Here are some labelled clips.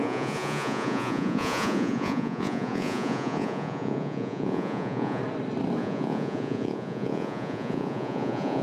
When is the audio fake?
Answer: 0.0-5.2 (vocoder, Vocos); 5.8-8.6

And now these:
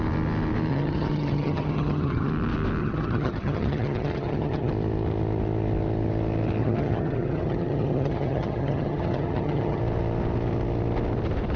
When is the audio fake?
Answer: 0.7-2.3 (vocoder, HiFi-GAN); 2.8-4.7; 6.6-9.8

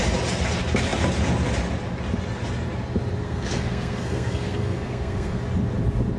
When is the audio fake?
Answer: 3.2-5.4 (codec, SNAC)

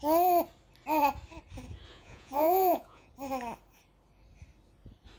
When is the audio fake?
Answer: 1.9-3.1 (vocoder, Vocos)